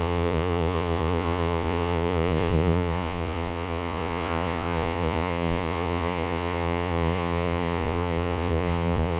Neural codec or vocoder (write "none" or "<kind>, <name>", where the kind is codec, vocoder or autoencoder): vocoder, Vocos